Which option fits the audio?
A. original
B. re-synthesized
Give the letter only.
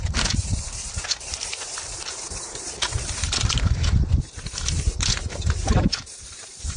B